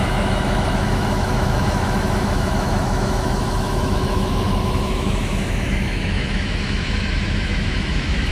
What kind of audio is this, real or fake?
fake